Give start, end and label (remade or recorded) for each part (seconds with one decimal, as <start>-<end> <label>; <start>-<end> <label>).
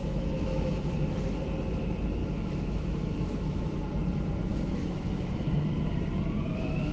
0.0-1.3 remade; 1.3-2.2 recorded; 2.2-3.8 remade; 3.8-4.5 recorded; 4.5-5.7 remade; 5.7-6.9 recorded